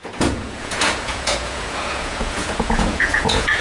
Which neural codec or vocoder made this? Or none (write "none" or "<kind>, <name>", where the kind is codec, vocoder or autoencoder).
vocoder, Vocos